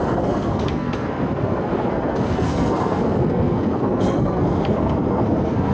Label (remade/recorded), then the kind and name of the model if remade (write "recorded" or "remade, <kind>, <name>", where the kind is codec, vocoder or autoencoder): remade, codec, SNAC